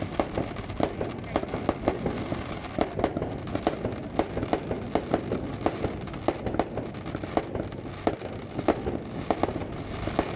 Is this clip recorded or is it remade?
recorded